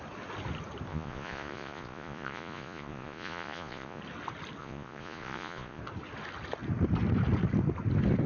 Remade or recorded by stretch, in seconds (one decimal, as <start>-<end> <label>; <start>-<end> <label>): 0.0-0.9 recorded; 0.9-4.0 remade; 4.0-4.6 recorded; 4.6-5.8 remade; 5.8-8.3 recorded